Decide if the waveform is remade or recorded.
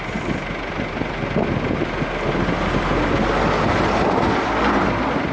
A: recorded